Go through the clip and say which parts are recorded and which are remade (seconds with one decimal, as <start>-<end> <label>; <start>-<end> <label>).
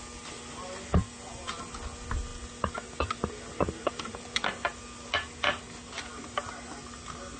0.0-7.4 recorded